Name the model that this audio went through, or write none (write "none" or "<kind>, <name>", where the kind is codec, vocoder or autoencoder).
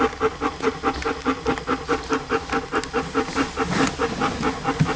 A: none